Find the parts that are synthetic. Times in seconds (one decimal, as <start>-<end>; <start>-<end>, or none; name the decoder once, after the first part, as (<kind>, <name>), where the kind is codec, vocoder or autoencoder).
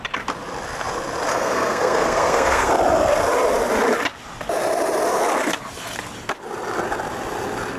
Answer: 1.3-2.7 (codec, SNAC)